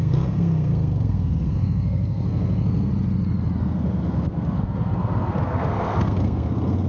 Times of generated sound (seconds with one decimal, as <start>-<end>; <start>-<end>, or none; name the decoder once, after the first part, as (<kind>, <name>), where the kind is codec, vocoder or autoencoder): 0.0-2.9 (codec, SNAC); 3.6-6.9